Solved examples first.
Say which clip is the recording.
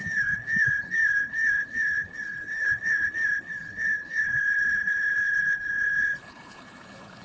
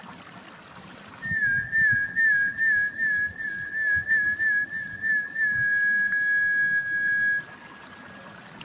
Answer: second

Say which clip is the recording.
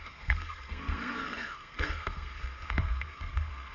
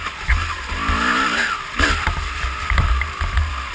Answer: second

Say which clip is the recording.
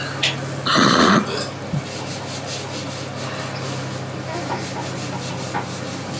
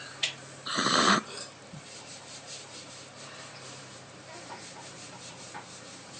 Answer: first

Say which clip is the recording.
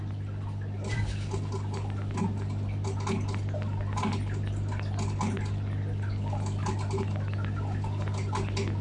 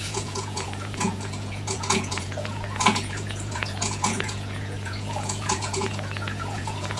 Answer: first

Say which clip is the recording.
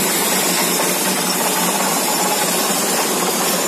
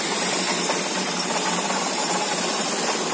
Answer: first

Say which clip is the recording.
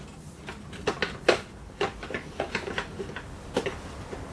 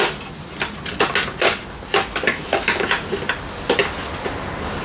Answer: second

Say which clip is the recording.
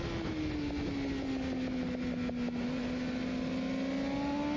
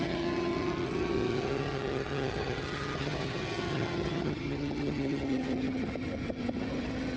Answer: first